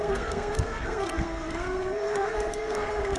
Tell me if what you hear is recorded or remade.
remade